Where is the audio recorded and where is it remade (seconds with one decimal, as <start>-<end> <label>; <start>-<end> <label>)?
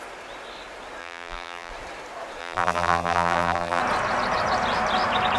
0.0-1.0 recorded; 1.0-1.7 remade; 1.7-2.4 recorded; 2.4-3.8 remade; 3.8-5.4 recorded